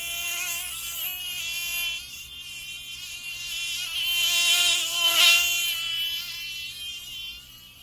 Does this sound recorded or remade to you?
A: remade